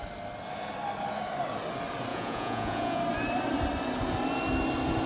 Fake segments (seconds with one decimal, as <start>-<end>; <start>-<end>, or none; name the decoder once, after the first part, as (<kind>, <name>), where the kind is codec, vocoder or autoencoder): 2.1-3.0 (vocoder, Vocos)